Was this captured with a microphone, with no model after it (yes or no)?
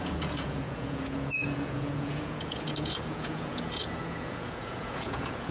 no